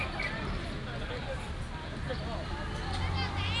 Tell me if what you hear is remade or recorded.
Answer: recorded